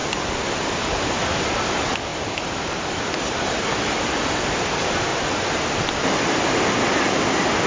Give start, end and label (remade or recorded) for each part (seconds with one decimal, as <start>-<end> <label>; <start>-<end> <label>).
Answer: 0.0-2.1 recorded; 2.1-3.3 remade; 3.3-5.1 recorded; 5.1-5.6 remade; 5.6-7.7 recorded